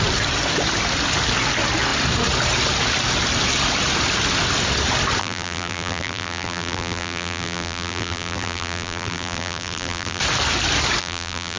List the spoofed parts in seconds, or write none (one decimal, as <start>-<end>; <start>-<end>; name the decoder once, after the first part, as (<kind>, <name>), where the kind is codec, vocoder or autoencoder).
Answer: 5.2-10.2 (vocoder, BigVGAN v2); 11.0-11.6